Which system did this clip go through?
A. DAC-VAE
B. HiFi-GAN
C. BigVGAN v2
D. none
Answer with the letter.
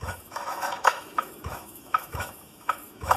A